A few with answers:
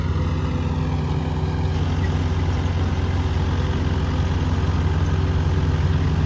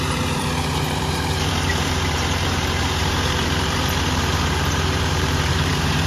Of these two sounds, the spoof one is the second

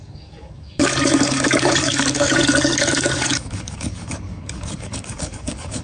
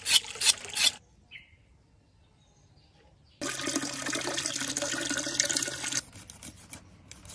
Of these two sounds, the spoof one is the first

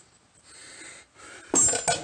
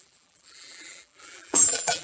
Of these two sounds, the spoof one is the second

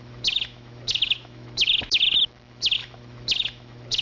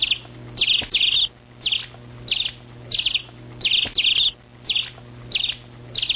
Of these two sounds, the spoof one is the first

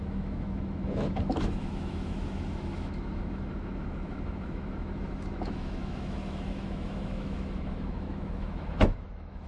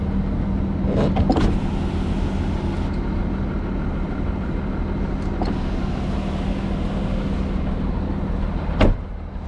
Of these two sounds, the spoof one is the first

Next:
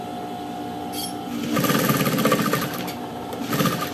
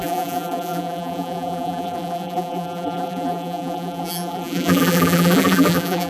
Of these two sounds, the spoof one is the second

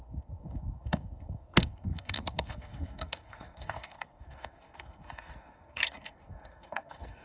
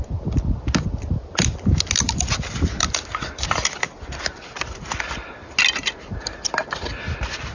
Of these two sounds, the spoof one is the first